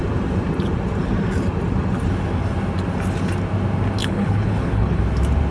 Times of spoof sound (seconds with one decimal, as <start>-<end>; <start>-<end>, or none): 4.0-5.0